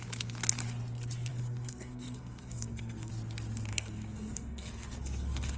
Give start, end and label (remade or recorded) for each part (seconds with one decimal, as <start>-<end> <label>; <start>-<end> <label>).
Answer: 0.0-1.3 recorded; 1.3-3.1 remade; 3.1-3.7 recorded; 3.7-5.6 remade